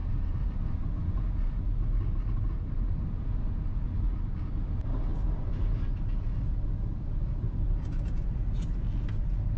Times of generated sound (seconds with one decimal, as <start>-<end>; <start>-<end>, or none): none